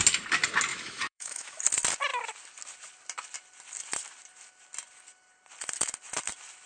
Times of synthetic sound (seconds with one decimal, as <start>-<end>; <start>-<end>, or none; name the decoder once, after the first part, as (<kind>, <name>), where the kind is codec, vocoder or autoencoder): 0.7-1.6 (autoencoder, DAC-VAE)